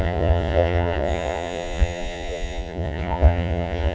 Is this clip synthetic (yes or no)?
yes